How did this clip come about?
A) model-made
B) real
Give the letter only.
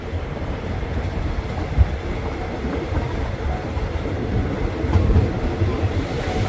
A